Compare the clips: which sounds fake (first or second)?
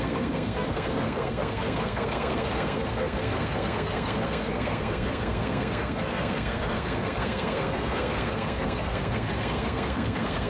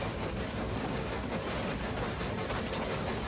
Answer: first